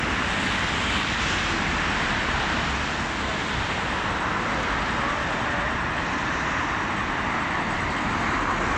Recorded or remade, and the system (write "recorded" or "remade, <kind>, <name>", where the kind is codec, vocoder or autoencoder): recorded